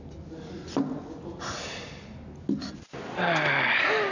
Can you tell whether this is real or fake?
real